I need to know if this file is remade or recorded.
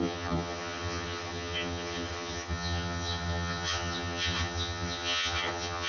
remade